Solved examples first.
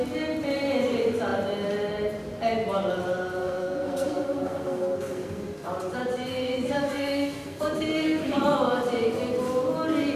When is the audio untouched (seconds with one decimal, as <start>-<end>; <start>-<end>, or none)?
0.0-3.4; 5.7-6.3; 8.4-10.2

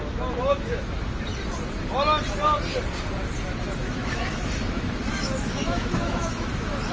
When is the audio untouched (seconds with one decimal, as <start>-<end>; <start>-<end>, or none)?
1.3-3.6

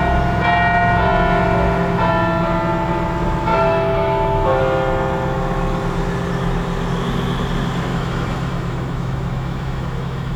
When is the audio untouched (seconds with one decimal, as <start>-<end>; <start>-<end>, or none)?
0.0-3.5; 4.6-7.9

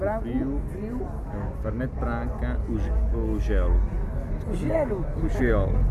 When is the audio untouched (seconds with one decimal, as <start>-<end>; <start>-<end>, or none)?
0.0-5.9

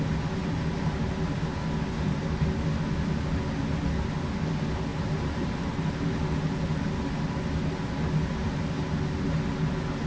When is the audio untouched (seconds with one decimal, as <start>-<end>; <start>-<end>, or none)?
0.0-0.4; 1.1-4.9; 6.5-10.1

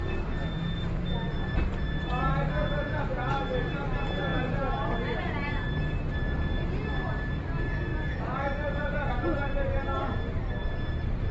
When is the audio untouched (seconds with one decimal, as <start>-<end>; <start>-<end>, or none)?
0.0-7.9; 9.1-11.3

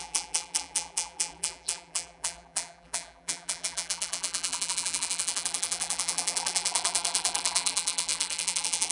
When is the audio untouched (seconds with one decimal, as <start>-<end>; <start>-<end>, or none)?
none

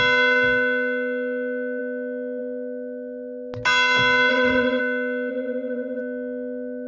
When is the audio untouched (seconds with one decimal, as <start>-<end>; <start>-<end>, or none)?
0.0-4.3; 4.8-5.3; 6.0-6.9